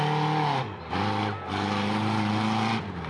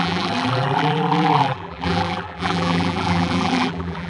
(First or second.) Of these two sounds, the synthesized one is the second